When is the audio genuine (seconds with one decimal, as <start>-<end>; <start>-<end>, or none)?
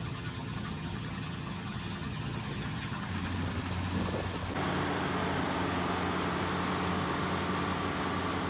3.1-8.5